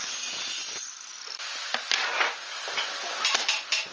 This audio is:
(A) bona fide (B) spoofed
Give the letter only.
A